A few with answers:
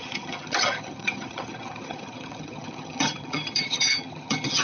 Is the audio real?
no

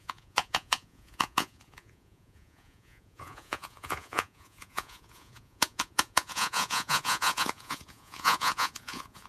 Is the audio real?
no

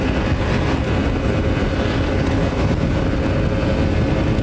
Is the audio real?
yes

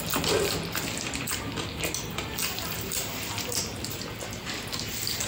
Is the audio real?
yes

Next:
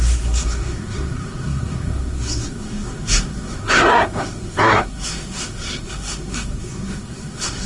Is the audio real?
no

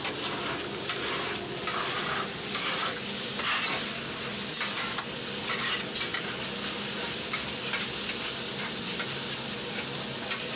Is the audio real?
yes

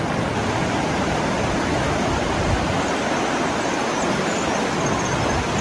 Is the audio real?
yes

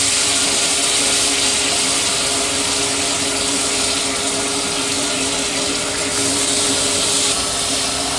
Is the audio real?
yes